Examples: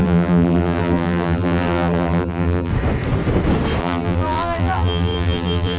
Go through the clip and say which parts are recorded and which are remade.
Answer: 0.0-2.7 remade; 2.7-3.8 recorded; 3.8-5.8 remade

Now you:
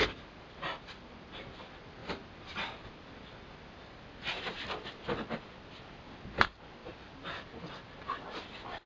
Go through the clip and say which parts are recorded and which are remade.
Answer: 0.0-6.8 recorded; 6.8-8.9 remade

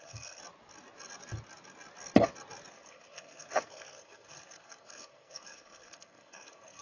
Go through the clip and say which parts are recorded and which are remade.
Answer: 0.0-0.4 remade; 0.4-2.7 recorded; 2.7-6.8 remade

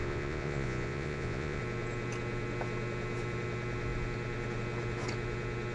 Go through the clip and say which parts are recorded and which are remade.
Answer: 0.0-1.6 remade; 1.6-5.7 recorded

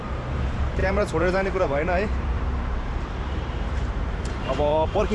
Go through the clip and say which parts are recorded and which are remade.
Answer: 0.0-5.1 remade

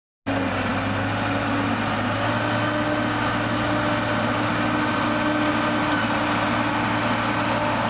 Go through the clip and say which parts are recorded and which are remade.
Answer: 0.0-7.9 recorded